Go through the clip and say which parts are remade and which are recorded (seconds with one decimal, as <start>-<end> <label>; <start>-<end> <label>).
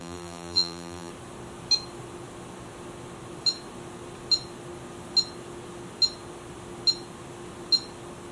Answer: 0.0-1.1 remade; 1.1-8.3 recorded